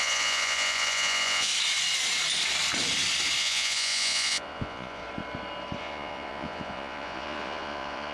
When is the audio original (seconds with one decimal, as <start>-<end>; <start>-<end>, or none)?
1.5-3.4; 5.0-5.8